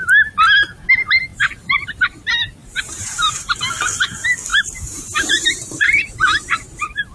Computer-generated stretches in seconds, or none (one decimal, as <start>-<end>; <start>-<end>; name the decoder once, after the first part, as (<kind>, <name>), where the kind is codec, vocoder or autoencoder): 1.3-2.0 (vocoder, BigVGAN v2); 2.6-3.6; 4.5-7.1